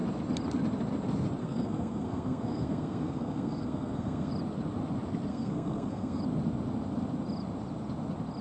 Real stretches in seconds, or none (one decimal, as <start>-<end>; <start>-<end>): 0.0-1.4; 4.3-5.3; 6.2-8.4